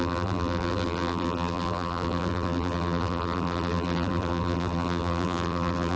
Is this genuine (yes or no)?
no